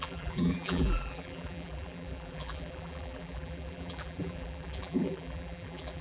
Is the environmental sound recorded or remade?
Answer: remade